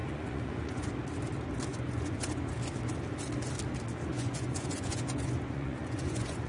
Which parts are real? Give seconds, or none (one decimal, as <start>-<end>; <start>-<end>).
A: 0.9-1.7; 2.3-4.1